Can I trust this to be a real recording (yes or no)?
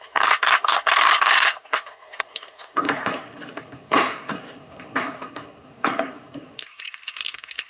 no